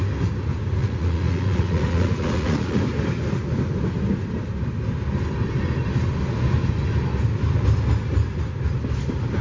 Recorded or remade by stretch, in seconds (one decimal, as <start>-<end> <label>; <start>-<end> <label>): 0.0-0.8 recorded; 0.8-2.8 remade; 2.8-9.4 recorded